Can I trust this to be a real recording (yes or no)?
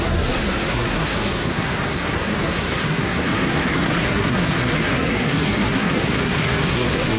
no